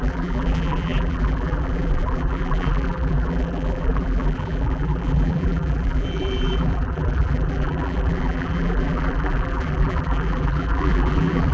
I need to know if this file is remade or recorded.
remade